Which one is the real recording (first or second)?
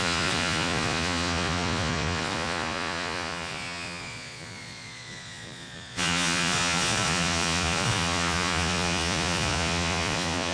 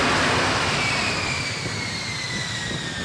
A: second